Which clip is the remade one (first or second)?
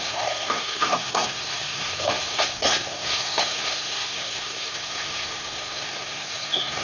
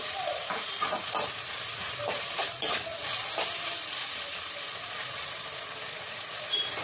first